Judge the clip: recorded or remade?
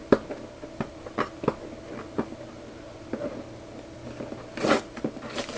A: recorded